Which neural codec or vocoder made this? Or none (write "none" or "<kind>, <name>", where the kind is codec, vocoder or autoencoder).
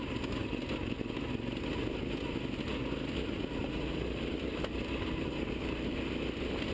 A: none